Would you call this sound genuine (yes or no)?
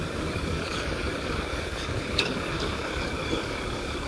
no